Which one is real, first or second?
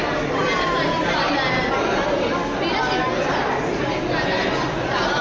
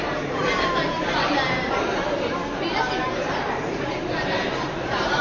first